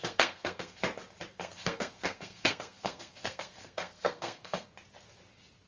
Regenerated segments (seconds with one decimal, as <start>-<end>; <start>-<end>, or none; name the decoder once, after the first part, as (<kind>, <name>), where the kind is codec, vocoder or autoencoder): 0.0-0.8 (codec, SNAC); 1.3-4.7